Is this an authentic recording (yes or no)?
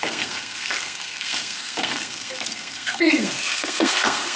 no